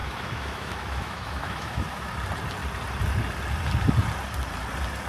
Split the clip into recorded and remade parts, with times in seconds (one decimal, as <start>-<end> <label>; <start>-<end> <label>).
0.0-2.1 remade; 2.1-5.1 recorded